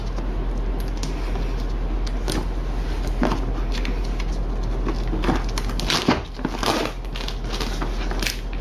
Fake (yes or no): no